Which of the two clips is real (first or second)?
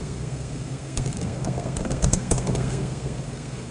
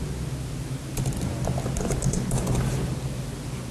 second